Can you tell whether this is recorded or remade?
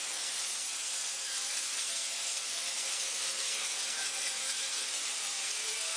remade